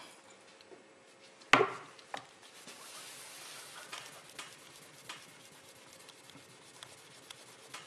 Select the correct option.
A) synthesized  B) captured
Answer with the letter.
B